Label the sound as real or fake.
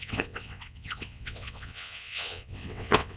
fake